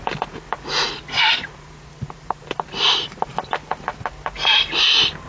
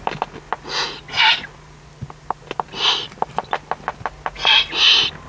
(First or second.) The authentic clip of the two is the second